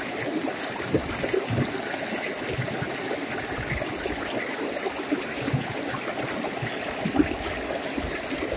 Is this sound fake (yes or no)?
no